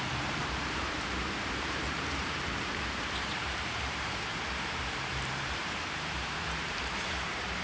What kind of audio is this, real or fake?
fake